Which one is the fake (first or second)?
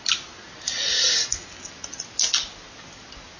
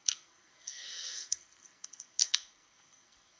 second